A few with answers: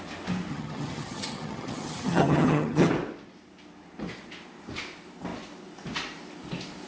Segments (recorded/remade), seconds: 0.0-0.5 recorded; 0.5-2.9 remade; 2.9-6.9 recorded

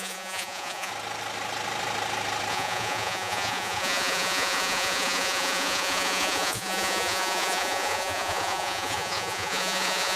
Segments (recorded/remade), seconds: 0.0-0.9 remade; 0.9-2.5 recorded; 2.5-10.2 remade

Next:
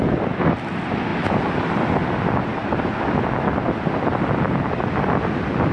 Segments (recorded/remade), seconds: 0.0-1.1 recorded; 1.1-1.9 remade; 1.9-2.5 recorded; 2.5-3.1 remade; 3.1-5.7 recorded